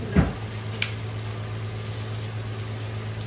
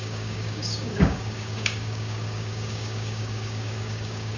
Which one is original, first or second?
first